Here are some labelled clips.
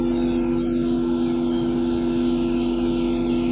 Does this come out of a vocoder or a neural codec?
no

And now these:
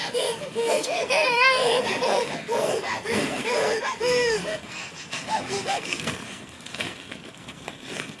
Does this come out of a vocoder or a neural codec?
yes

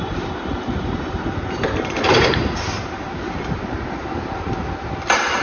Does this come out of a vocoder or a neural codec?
yes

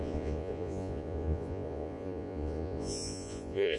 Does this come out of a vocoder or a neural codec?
yes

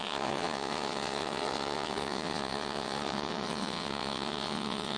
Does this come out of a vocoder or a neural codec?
yes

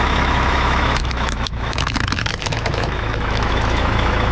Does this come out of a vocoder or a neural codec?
yes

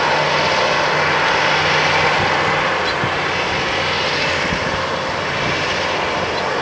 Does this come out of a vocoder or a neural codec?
no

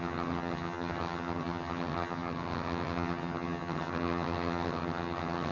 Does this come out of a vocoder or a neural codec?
yes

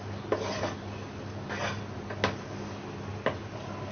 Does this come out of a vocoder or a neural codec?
no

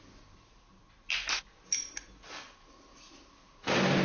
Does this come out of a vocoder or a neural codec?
no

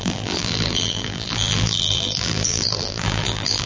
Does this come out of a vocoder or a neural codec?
yes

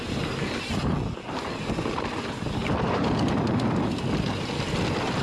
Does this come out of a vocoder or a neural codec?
no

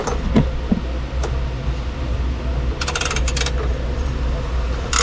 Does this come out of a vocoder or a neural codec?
no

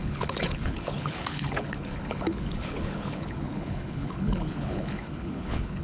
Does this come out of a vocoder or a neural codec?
yes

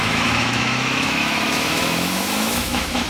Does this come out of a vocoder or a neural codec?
yes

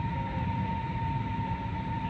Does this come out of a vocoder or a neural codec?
no